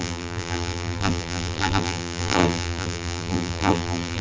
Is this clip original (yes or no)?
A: no